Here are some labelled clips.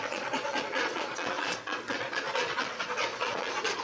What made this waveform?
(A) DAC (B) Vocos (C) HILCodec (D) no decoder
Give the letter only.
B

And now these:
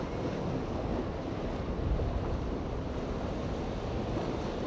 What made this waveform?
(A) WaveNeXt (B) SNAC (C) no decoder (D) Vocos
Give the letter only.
C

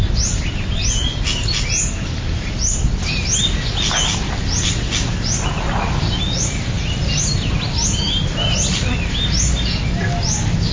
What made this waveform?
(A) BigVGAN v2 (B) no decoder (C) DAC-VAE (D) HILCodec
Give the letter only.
B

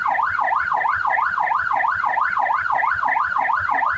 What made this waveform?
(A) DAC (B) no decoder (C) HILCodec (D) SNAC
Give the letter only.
B